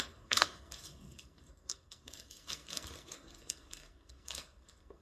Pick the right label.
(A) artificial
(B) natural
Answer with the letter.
A